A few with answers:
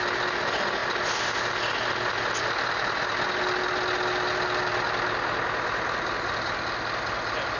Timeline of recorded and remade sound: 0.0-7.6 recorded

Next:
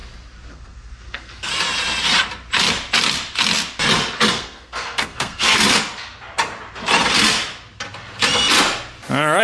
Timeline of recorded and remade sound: 0.0-0.5 recorded; 0.5-1.5 remade; 1.5-4.3 recorded; 4.3-5.6 remade; 5.6-9.4 recorded

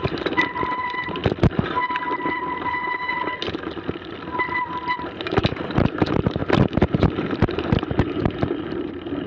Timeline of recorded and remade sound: 0.0-1.2 remade; 1.2-4.9 recorded; 4.9-9.3 remade

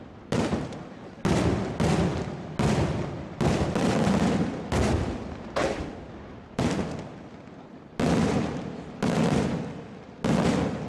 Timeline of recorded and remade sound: 0.0-10.9 recorded

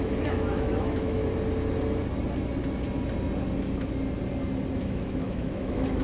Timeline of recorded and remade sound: 0.0-1.2 remade; 1.2-4.8 recorded; 4.8-6.0 remade

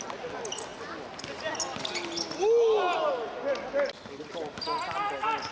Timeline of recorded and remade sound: 0.0-5.5 recorded

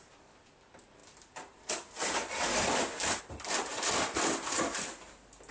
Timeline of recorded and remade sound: 0.0-5.5 recorded

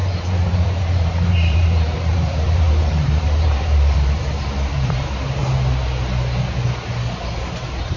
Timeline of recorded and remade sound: 0.0-5.4 remade; 5.4-7.3 recorded; 7.3-8.0 remade